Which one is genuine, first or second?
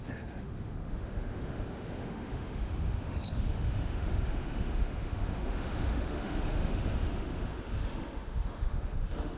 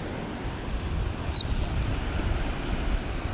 second